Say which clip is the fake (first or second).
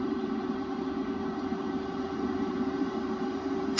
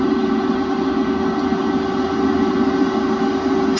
first